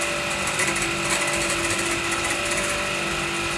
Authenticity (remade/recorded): recorded